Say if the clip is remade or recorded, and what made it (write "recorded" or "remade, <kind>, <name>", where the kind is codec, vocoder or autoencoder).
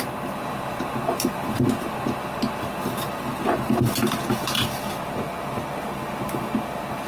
recorded